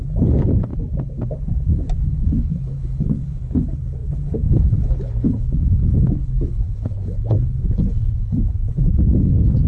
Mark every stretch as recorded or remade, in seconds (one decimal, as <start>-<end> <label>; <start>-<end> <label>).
0.0-0.7 remade; 0.7-2.0 recorded; 2.0-9.7 remade